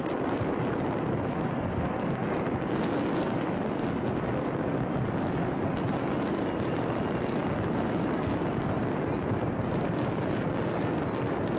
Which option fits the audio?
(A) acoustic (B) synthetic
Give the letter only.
A